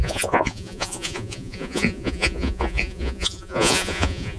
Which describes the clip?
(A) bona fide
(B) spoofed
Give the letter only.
B